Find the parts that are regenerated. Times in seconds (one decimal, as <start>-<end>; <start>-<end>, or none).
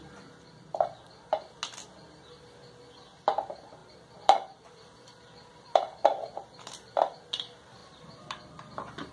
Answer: 3.8-7.0; 7.8-9.1